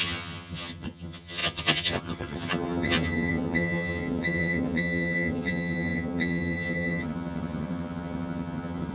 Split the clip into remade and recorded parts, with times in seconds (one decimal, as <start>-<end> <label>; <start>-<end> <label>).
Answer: 0.0-8.9 remade